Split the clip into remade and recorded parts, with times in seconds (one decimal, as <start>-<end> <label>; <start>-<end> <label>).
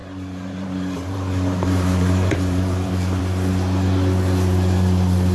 0.0-3.2 remade; 3.2-5.3 recorded